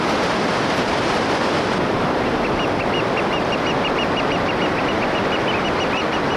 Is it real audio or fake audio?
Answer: real